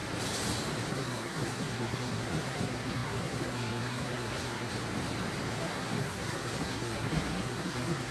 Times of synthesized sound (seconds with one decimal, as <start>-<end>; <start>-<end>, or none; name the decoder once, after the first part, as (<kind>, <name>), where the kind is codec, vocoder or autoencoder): 0.9-4.7 (codec, SNAC); 5.5-8.1